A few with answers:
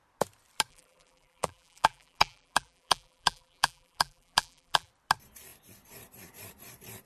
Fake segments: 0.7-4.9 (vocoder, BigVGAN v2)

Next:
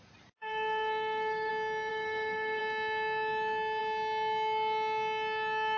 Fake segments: 0.4-1.5 (codec, SNAC); 1.9-2.6

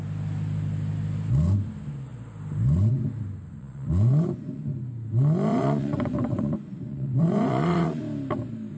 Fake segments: 3.6-4.6 (vocoder, Vocos); 5.5-8.0

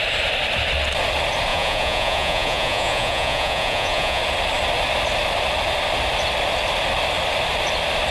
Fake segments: 1.5-4.2 (vocoder, Vocos)

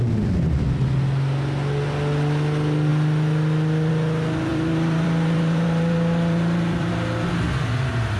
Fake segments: 4.5-6.9 (vocoder, BigVGAN v2)

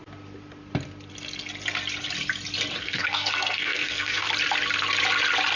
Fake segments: 2.8-4.3 (codec, SNAC)